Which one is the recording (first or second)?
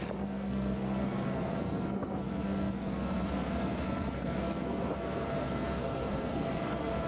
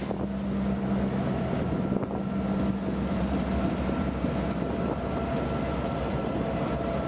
second